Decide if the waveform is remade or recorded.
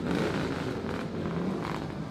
recorded